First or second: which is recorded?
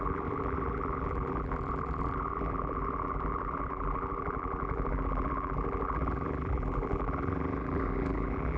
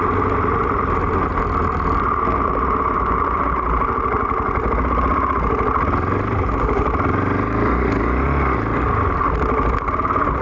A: second